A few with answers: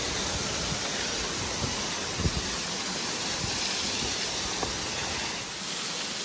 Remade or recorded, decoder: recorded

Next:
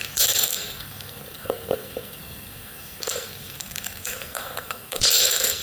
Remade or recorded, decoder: remade, codec, SNAC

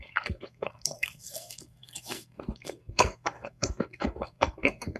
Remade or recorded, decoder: remade, codec, SNAC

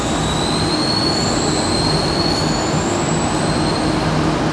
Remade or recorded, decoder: recorded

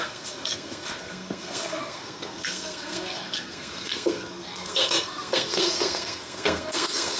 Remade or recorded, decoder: remade, codec, SNAC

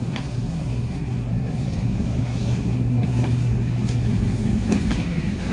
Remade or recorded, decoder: remade, codec, SNAC